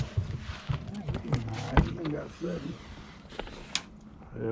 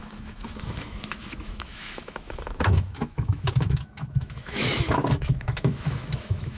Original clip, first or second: first